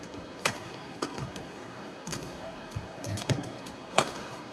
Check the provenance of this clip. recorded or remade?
remade